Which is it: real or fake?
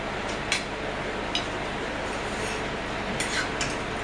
real